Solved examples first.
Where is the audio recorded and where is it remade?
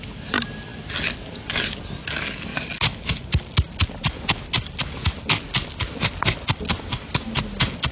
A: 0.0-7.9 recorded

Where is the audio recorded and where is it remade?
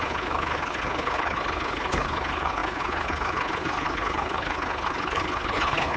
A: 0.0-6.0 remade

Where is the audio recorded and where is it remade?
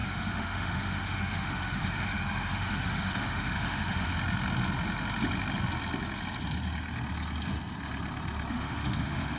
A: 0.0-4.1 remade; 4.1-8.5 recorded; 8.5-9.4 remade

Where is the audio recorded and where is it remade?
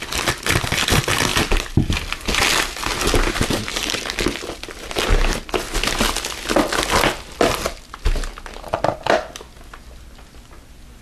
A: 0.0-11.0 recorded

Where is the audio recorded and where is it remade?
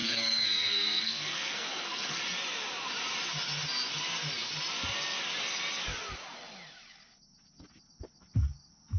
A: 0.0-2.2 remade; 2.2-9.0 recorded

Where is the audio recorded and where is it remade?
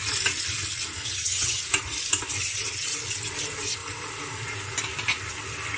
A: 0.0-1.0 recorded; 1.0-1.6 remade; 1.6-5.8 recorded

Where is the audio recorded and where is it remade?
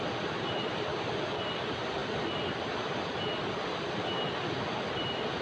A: 0.0-5.4 recorded